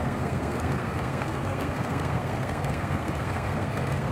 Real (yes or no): no